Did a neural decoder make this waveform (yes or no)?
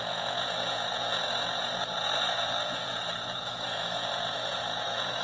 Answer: yes